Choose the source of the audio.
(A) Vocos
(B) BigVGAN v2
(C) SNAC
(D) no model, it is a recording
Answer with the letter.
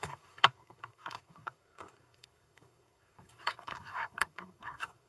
C